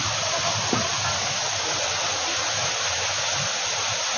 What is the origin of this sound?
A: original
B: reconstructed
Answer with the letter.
A